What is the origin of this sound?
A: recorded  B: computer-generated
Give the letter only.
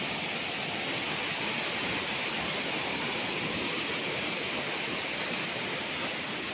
A